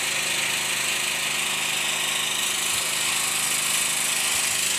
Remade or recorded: recorded